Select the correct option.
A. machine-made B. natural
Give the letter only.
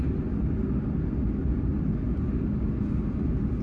B